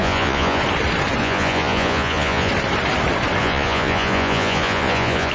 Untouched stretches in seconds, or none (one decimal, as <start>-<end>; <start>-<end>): 0.6-1.2; 2.5-3.4